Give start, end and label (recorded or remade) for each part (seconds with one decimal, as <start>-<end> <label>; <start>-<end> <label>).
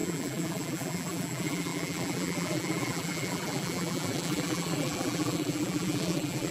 0.0-6.5 remade